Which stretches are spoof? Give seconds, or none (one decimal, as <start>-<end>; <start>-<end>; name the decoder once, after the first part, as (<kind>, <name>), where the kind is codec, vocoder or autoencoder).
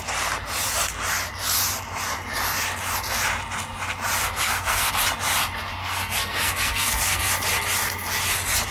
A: 4.2-4.9 (codec, SNAC); 5.8-7.3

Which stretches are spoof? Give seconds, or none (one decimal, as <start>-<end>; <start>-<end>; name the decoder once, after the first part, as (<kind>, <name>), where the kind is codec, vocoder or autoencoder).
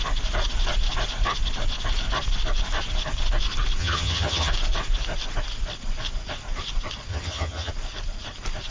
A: 3.8-4.5 (vocoder, HiFi-GAN); 7.1-7.7